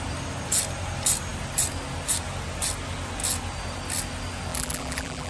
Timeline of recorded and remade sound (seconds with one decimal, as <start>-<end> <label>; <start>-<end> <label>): 0.0-4.5 recorded; 4.5-5.3 remade